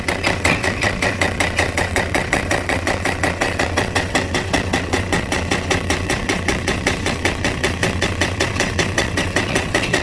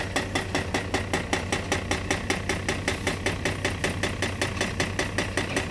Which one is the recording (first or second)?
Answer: second